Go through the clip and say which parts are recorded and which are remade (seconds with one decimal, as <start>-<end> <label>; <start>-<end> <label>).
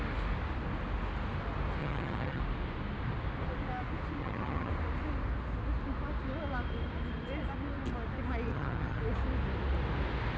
0.0-1.8 recorded; 1.8-2.4 remade; 2.4-4.2 recorded; 4.2-4.7 remade; 4.7-8.5 recorded; 8.5-9.0 remade; 9.0-10.4 recorded